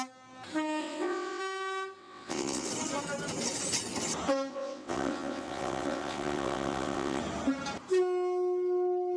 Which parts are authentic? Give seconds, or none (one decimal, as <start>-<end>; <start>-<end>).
0.0-0.8; 1.4-2.0; 2.7-4.5; 7.2-9.2